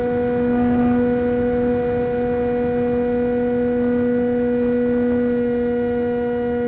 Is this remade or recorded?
recorded